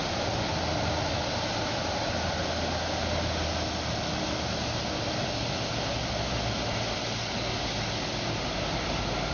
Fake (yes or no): no